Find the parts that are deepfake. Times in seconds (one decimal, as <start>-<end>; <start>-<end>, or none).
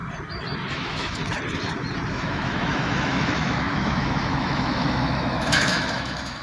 0.7-1.2; 2.1-6.4